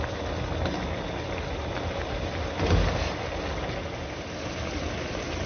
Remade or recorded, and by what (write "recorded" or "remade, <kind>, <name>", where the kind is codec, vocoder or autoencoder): recorded